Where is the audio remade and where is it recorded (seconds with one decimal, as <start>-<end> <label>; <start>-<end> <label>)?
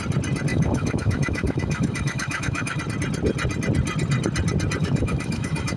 0.0-0.5 recorded; 0.5-2.8 remade; 2.8-4.8 recorded; 4.8-5.8 remade